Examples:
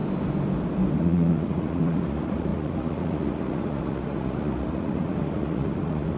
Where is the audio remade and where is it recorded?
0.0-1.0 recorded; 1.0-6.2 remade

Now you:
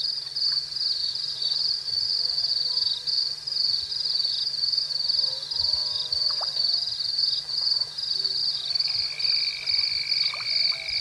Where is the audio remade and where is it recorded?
0.0-1.0 recorded; 1.0-2.4 remade; 2.4-11.0 recorded

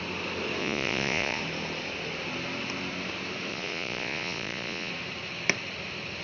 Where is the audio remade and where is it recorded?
0.0-0.6 recorded; 0.6-1.4 remade; 1.4-3.5 recorded; 3.5-4.9 remade; 4.9-6.2 recorded

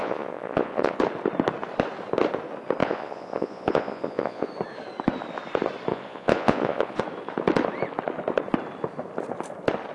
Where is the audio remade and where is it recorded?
0.0-1.0 remade; 1.0-2.8 recorded; 2.8-4.5 remade; 4.5-5.9 recorded; 5.9-7.0 remade; 7.0-9.9 recorded

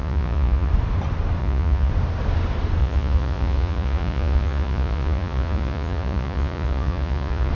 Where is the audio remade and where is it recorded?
0.0-0.7 remade; 0.7-1.4 recorded; 1.4-1.9 remade; 1.9-2.8 recorded; 2.8-7.5 remade

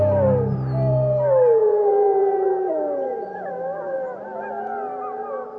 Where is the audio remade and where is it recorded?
0.0-1.6 recorded; 1.6-3.5 remade; 3.5-5.6 recorded

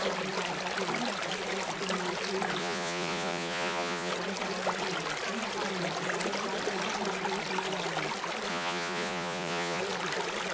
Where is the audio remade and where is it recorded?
0.0-2.6 recorded; 2.6-4.1 remade; 4.1-8.5 recorded; 8.5-9.8 remade; 9.8-10.5 recorded

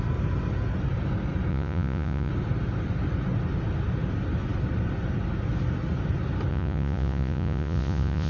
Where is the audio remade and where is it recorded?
0.0-1.5 recorded; 1.5-2.3 remade; 2.3-6.5 recorded; 6.5-8.3 remade